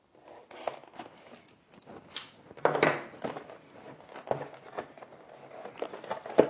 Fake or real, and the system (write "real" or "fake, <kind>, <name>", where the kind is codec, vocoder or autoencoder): real